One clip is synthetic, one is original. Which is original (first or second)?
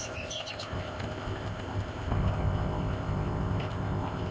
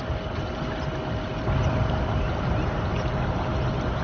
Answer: second